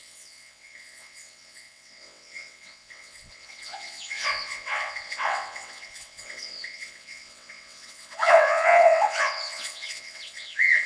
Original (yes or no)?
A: no